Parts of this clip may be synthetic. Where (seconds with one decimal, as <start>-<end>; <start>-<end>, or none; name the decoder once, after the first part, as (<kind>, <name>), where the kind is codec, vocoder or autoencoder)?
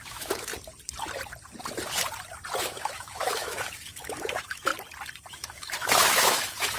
0.0-0.5 (autoencoder, DAC-VAE); 2.6-4.7; 5.3-6.8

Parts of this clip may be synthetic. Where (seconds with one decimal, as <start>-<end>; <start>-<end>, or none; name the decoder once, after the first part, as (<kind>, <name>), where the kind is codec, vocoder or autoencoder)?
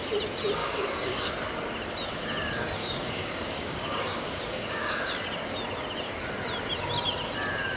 0.6-1.3 (codec, DAC); 2.8-5.1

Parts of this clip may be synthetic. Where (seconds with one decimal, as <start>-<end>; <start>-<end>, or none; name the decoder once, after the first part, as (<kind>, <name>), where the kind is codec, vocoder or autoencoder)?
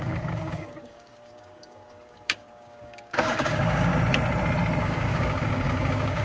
0.0-3.9 (codec, DAC); 4.8-6.2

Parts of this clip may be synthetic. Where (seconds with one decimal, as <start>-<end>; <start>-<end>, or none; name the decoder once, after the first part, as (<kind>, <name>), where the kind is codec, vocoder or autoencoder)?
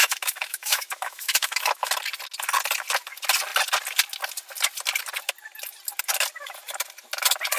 0.0-1.9 (autoencoder, DAC-VAE)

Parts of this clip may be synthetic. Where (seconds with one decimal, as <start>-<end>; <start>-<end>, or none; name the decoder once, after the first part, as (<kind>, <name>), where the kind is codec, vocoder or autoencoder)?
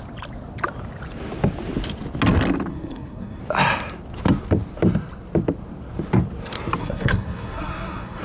2.7-3.4 (codec, SNAC); 6.8-8.2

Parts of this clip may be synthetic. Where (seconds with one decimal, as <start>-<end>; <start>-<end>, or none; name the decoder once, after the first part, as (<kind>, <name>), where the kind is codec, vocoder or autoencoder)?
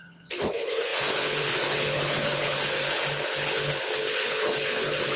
0.0-5.2 (codec, HILCodec)